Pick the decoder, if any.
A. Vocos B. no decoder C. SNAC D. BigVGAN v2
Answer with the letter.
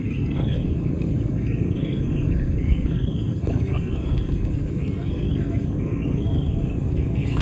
C